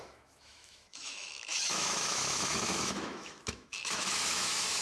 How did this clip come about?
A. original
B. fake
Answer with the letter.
B